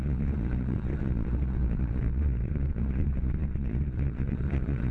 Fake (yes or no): yes